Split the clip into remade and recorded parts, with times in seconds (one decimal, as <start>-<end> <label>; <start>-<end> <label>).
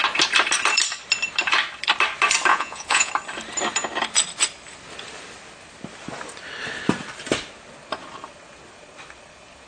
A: 0.0-2.5 recorded; 2.5-3.1 remade; 3.1-9.7 recorded